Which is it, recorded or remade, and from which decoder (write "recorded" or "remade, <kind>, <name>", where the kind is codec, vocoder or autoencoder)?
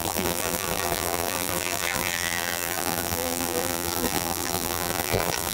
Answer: remade, vocoder, BigVGAN v2